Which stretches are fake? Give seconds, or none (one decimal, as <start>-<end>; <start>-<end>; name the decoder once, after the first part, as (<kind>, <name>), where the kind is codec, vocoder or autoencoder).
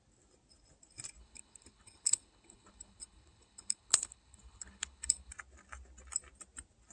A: 1.2-5.3 (codec, HILCodec)